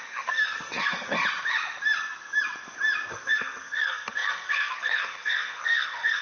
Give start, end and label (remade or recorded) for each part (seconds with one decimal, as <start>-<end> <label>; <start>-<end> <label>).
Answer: 0.0-1.2 remade; 1.2-3.1 recorded; 3.1-6.2 remade